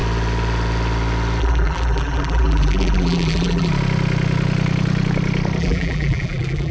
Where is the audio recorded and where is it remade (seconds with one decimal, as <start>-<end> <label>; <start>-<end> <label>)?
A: 0.0-1.4 recorded; 1.4-3.7 remade; 3.7-5.6 recorded; 5.6-6.7 remade